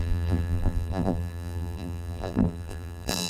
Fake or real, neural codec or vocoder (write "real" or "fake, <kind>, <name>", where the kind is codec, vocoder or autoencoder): fake, vocoder, BigVGAN v2